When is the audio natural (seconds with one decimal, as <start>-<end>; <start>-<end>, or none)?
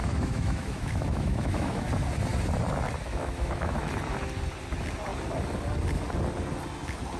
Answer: 1.9-3.1; 3.9-7.2